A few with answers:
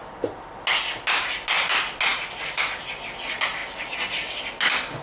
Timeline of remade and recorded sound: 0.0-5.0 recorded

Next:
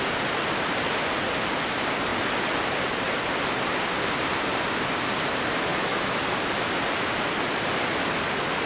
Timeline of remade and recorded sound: 0.0-5.7 recorded; 5.7-6.2 remade; 6.2-8.7 recorded

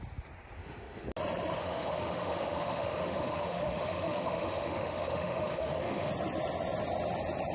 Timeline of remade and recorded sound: 0.0-0.6 recorded; 0.6-1.1 remade; 1.1-1.6 recorded; 1.6-6.1 remade; 6.1-7.5 recorded

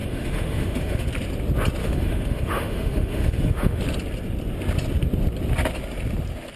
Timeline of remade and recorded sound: 0.0-1.1 remade; 1.1-1.8 recorded; 1.8-3.8 remade; 3.8-6.6 recorded

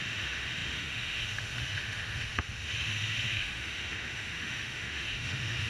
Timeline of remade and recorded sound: 0.0-5.7 remade

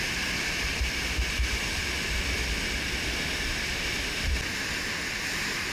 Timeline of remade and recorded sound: 0.0-5.7 recorded

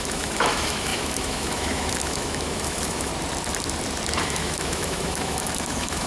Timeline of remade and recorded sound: 0.0-3.1 remade; 3.1-4.2 recorded; 4.2-6.1 remade